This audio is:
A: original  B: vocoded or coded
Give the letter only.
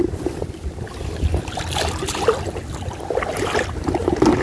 A